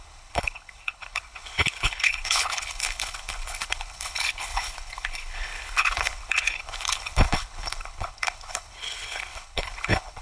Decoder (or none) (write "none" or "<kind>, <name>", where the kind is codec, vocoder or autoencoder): codec, HILCodec